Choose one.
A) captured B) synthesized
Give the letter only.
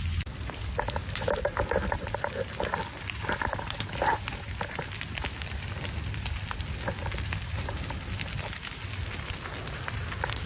A